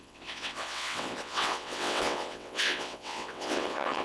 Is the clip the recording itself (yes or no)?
no